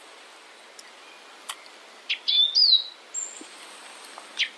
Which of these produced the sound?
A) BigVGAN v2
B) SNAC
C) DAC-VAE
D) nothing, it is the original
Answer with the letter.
D